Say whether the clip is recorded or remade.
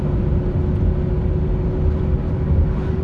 recorded